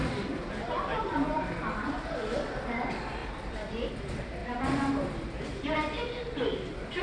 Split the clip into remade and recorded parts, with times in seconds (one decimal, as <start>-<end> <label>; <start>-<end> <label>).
0.0-3.2 remade; 3.2-3.9 recorded; 3.9-4.4 remade; 4.4-7.0 recorded